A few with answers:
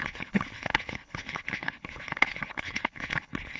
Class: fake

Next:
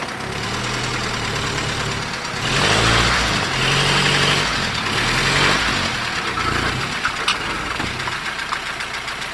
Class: real